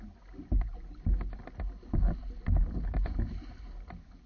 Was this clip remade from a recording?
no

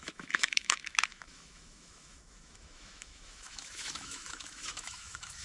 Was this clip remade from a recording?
yes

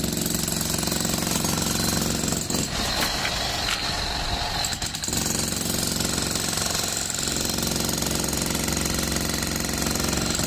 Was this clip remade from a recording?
no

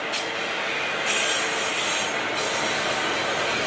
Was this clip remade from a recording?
no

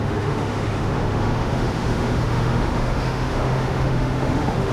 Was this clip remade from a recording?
yes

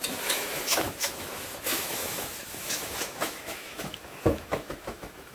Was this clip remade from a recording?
yes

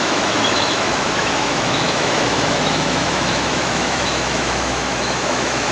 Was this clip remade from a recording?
yes